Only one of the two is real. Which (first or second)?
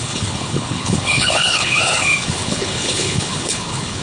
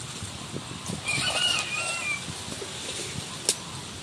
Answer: second